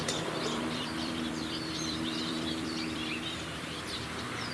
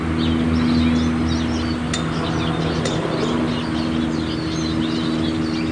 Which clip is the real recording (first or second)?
second